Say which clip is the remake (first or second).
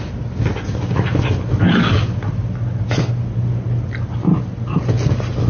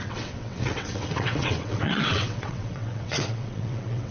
second